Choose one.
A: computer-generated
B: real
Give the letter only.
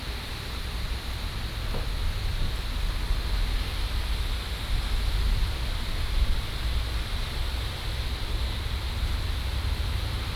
B